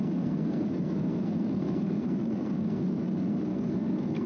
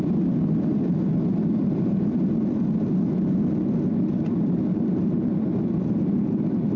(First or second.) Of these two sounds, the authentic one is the second